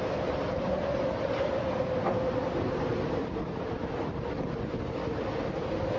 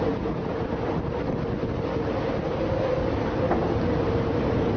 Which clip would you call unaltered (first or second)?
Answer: second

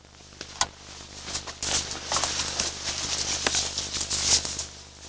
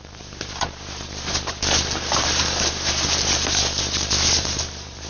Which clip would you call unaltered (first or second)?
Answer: first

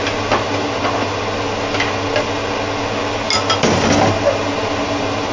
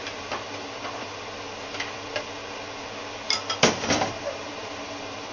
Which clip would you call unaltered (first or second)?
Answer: first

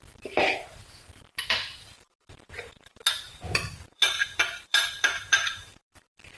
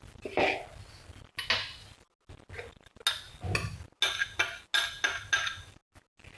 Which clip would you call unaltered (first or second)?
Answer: second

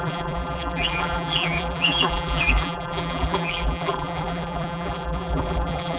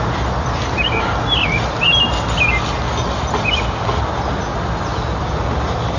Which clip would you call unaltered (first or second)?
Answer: second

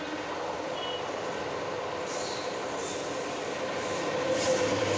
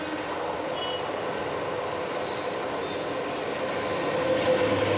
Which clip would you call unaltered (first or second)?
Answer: second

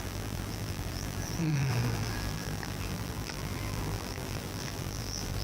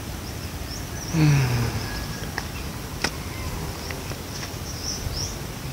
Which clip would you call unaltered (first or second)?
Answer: second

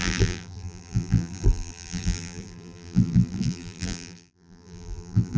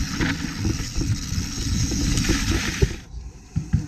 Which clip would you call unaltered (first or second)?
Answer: second